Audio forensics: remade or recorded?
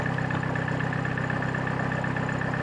recorded